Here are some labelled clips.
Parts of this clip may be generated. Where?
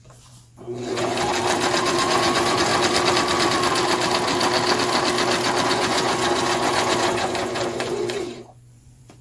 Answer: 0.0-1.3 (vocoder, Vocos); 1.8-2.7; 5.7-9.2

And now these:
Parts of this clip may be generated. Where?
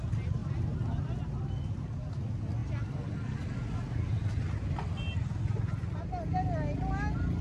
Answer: none